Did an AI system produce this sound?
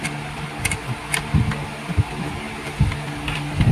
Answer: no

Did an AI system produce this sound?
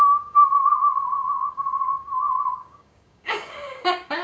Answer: yes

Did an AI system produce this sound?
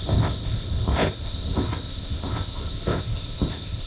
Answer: yes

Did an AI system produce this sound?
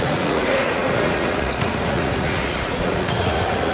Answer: yes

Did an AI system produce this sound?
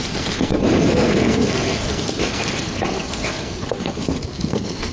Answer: yes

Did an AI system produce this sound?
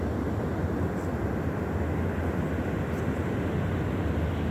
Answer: no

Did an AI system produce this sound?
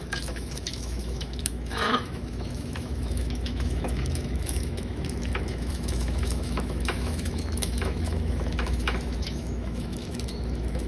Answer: yes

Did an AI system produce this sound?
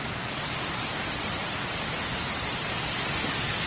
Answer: no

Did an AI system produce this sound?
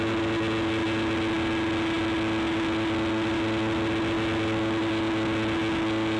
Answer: no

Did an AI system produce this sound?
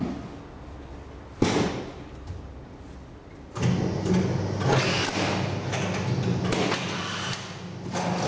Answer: no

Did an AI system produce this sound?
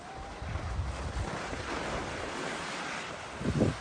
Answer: no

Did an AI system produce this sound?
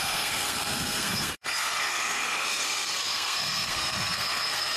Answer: yes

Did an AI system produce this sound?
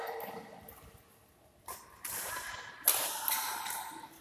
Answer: no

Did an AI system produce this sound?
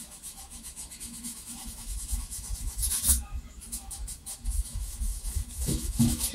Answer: yes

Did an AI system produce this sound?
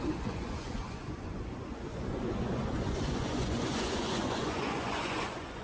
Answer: yes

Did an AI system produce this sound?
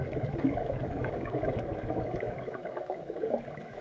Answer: yes